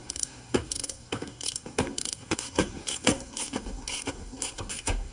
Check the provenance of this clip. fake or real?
fake